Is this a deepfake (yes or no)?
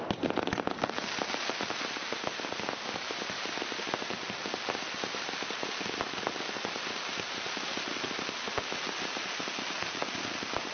no